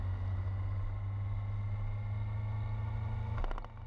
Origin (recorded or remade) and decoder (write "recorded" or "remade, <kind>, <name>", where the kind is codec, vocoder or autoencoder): recorded